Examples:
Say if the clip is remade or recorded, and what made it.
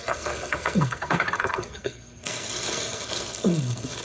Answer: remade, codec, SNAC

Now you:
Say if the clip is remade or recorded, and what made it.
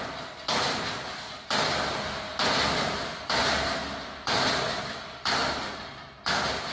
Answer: recorded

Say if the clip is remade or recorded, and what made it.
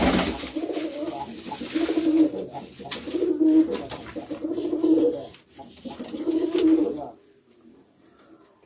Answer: recorded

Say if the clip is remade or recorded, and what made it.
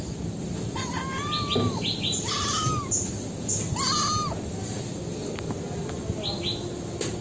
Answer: recorded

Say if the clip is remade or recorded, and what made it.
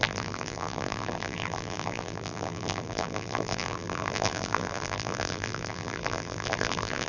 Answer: remade, vocoder, BigVGAN v2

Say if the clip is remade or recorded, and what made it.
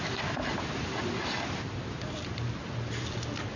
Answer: recorded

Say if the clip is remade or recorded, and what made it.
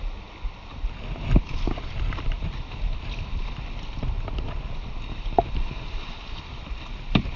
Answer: recorded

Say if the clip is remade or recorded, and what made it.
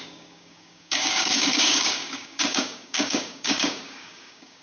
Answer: remade, codec, DAC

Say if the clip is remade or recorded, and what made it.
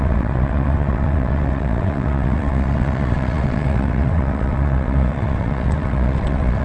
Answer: remade, vocoder, WaveNeXt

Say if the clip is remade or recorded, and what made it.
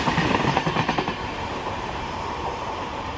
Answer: remade, vocoder, BigVGAN v2